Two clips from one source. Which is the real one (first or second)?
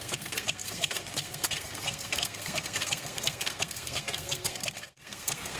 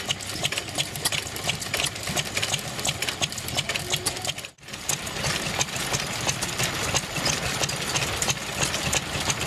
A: second